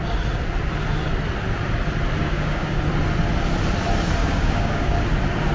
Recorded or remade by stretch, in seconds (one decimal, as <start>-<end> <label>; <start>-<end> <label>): 0.0-2.2 recorded; 2.2-2.8 remade; 2.8-4.2 recorded; 4.2-5.0 remade; 5.0-5.5 recorded